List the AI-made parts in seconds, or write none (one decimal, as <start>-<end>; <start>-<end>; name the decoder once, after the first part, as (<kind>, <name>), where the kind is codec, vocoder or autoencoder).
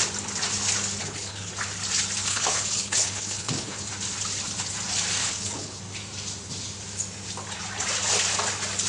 1.0-1.5 (codec, HILCodec); 2.3-3.9; 5.2-5.8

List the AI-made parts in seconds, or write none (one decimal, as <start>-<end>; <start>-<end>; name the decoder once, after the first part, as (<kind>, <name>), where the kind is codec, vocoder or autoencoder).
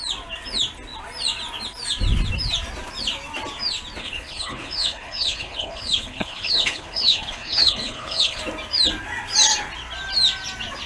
4.0-8.4 (codec, HILCodec)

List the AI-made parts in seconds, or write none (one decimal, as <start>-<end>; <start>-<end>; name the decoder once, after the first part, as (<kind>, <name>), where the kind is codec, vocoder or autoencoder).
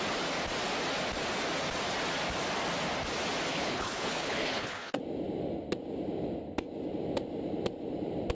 3.5-5.0 (codec, HILCodec)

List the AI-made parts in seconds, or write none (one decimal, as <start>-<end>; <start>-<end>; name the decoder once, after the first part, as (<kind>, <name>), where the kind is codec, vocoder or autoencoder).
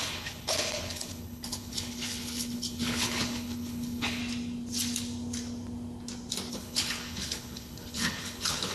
0.0-4.2 (codec, HILCodec); 6.5-8.7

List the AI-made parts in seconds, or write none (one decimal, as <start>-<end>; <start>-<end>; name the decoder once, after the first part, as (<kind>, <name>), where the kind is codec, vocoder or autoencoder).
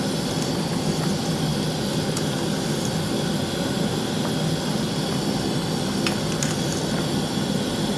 none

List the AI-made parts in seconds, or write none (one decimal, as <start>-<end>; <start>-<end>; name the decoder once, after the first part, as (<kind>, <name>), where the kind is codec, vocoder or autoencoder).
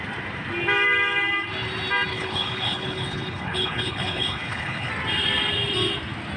2.1-4.9 (codec, HILCodec)